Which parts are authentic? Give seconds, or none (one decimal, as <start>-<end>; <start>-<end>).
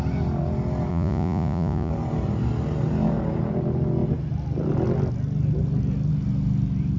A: 0.0-0.9; 1.9-7.0